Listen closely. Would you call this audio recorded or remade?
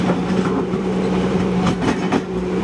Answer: remade